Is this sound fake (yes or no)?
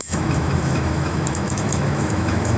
yes